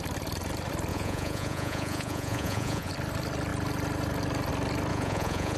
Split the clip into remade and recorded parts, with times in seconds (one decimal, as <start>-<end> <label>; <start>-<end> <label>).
0.0-0.9 recorded; 0.9-2.9 remade; 2.9-4.9 recorded; 4.9-5.6 remade